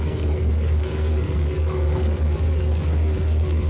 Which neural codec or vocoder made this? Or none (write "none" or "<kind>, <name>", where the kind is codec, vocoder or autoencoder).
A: codec, SNAC